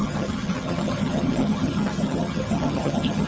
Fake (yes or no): yes